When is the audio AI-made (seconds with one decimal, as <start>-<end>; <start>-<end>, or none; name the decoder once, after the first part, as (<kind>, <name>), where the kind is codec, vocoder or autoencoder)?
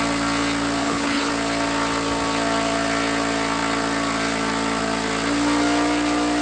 0.8-1.3 (codec, HILCodec)